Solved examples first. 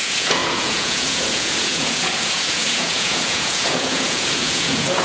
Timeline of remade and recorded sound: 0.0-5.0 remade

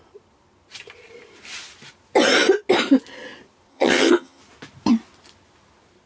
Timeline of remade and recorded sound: 0.0-3.7 recorded; 3.7-4.4 remade; 4.4-6.1 recorded

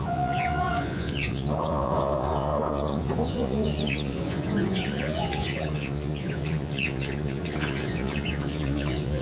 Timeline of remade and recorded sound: 0.0-9.2 remade